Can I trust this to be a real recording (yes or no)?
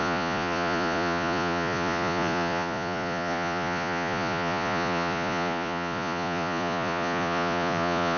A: no